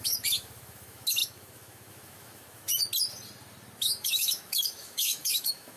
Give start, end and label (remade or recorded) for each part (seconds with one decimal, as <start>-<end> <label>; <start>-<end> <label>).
0.0-2.8 remade; 2.8-3.8 recorded; 3.8-5.8 remade